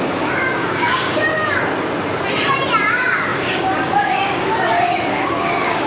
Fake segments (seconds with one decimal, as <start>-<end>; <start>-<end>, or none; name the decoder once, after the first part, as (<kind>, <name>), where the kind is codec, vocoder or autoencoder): 0.0-1.3 (codec, DAC); 2.9-5.9